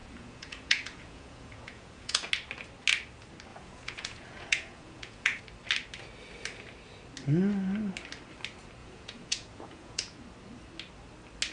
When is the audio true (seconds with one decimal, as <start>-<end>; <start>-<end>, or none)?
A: 2.3-3.5; 5.4-8.8; 10.2-11.5